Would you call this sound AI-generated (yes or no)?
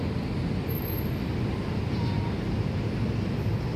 no